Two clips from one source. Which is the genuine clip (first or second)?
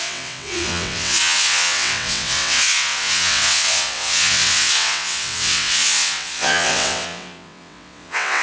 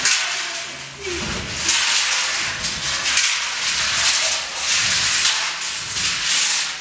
second